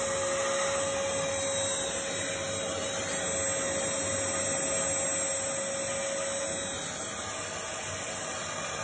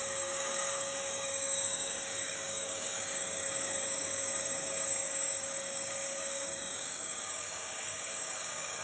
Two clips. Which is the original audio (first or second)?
first